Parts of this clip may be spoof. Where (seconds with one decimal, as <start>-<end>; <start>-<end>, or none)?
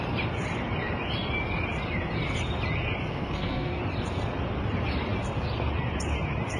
3.1-3.8